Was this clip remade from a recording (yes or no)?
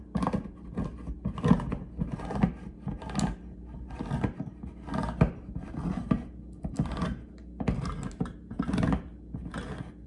no